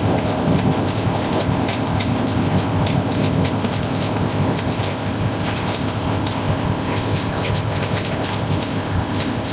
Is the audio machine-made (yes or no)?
yes